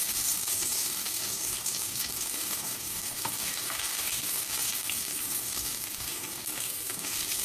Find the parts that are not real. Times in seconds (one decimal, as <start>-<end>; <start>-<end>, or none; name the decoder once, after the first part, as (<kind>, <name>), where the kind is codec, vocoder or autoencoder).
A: 0.0-7.4 (codec, DAC)